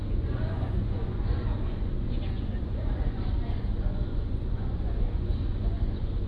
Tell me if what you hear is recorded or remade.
remade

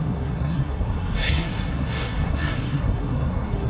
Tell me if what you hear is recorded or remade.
remade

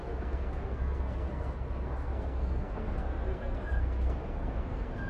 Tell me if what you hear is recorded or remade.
remade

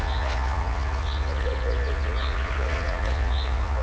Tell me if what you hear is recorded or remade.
remade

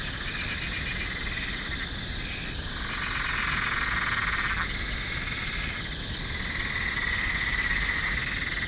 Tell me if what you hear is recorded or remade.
recorded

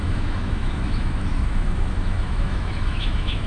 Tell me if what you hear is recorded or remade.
remade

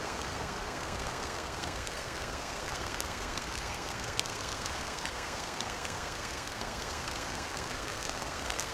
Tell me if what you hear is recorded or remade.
remade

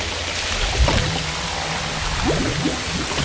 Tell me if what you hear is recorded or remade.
recorded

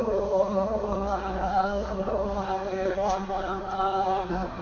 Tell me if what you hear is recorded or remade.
remade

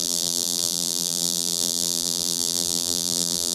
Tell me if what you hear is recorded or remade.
remade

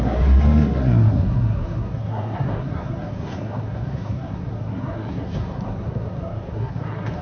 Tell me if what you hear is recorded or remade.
remade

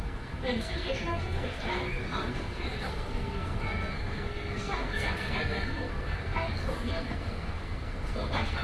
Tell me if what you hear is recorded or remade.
remade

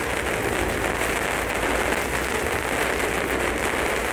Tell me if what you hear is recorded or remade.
recorded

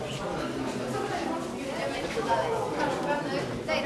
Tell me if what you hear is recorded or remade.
recorded